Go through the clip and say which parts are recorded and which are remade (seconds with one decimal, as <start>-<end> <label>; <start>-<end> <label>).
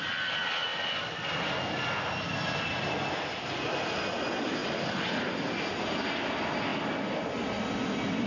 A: 0.0-8.3 recorded